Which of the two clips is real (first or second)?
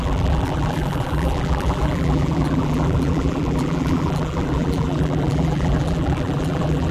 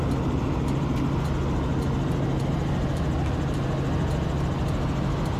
second